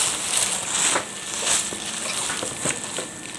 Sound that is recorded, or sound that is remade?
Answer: recorded